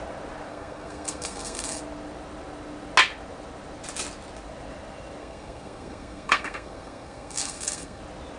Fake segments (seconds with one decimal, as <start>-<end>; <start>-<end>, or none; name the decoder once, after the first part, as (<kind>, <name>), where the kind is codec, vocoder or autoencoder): 0.5-1.8 (codec, SNAC); 5.2-8.0